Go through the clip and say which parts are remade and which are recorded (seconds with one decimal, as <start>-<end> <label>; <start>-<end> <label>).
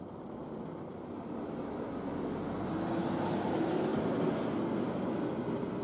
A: 0.0-5.8 recorded